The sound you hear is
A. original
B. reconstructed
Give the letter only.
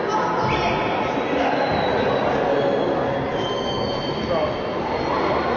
A